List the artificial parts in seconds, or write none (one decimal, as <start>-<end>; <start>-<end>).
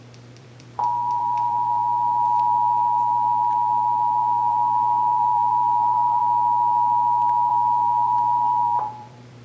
0.0-1.8; 4.2-6.2; 7.5-9.4